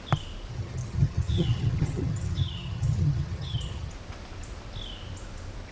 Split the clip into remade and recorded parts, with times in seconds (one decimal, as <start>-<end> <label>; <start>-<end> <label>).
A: 0.0-0.5 recorded; 0.5-3.9 remade; 3.9-5.7 recorded